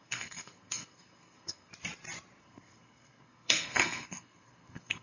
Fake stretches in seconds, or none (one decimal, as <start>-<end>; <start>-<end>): 0.0-1.7; 2.4-5.0

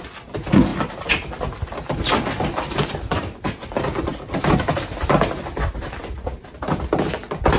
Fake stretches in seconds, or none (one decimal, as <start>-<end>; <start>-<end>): none